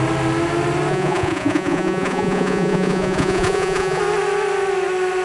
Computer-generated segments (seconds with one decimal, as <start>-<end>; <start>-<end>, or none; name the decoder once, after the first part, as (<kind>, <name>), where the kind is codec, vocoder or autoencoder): 0.9-4.0 (vocoder, Vocos)